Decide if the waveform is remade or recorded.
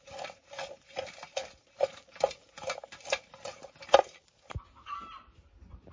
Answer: remade